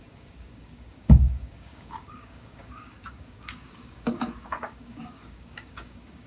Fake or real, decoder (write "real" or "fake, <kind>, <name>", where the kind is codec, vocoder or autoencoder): fake, codec, DAC